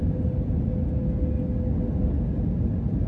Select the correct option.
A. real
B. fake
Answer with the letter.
A